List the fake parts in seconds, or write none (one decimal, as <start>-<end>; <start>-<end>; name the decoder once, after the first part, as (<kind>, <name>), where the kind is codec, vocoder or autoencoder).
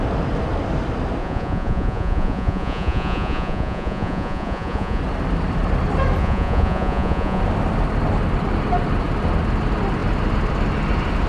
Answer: 1.2-5.0 (vocoder, Vocos); 6.2-7.4